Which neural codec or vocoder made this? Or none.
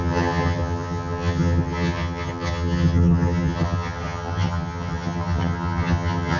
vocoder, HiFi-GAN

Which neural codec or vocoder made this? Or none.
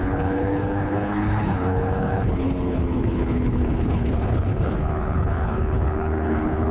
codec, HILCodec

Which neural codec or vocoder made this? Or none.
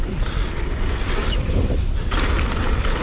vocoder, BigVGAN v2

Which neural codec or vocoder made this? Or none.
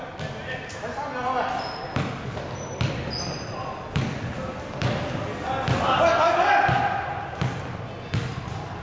none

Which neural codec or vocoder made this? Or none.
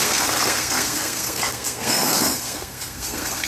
codec, SNAC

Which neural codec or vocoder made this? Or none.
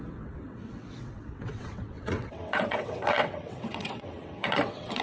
vocoder, WaveNeXt